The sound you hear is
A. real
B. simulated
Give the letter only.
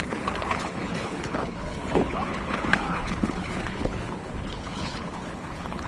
B